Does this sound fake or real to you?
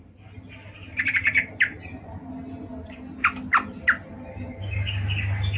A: real